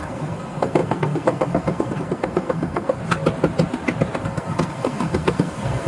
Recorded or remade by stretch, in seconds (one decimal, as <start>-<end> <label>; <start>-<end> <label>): 0.0-3.0 remade; 3.0-4.2 recorded; 4.2-5.9 remade